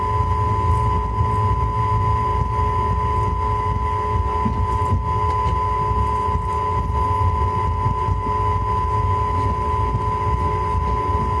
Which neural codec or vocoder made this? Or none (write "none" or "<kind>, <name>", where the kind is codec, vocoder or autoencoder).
none